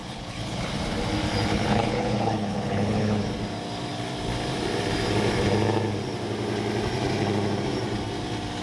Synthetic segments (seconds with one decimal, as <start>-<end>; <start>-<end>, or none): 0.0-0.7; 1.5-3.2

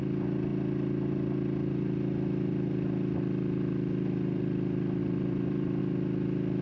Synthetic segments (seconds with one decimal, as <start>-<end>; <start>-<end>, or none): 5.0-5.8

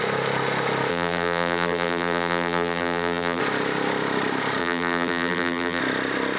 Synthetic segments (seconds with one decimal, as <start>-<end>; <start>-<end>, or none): 0.9-3.4; 4.6-5.8

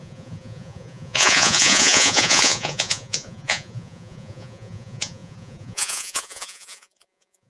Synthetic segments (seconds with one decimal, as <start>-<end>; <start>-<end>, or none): 0.0-7.5